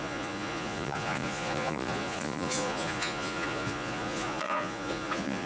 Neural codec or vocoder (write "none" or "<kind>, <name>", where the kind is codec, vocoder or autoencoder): vocoder, Vocos